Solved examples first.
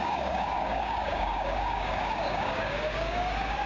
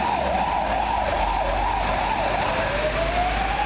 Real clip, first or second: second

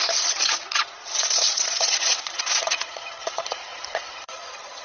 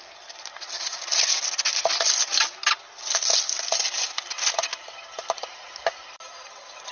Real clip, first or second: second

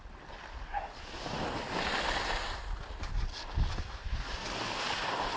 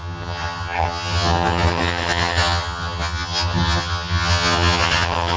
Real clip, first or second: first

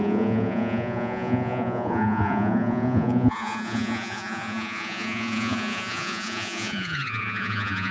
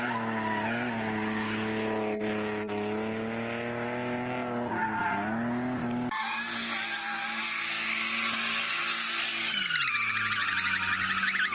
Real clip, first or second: second